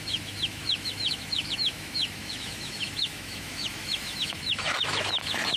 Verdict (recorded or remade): remade